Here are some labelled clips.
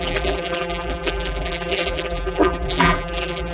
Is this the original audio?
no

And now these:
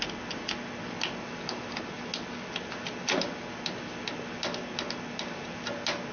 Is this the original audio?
yes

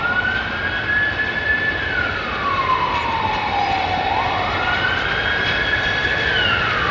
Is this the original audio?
yes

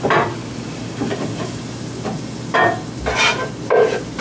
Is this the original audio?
yes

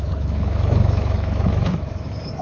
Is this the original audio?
no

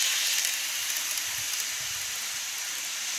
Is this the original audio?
yes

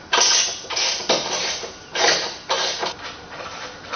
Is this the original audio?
no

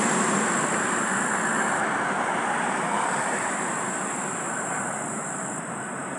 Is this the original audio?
no